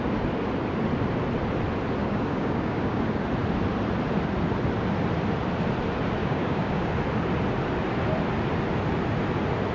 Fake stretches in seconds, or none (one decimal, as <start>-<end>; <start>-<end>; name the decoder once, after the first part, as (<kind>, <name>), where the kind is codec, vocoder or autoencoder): 2.0-3.0 (codec, DAC); 6.2-6.9